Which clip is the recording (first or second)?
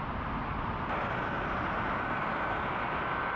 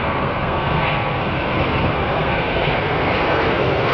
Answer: first